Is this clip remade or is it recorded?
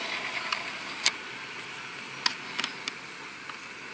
recorded